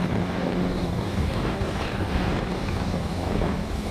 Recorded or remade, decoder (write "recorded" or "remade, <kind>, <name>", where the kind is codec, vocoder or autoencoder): remade, codec, DAC